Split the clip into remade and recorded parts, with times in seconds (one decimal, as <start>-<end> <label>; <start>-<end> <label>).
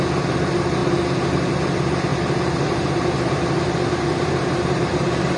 0.0-2.1 recorded; 2.1-5.4 remade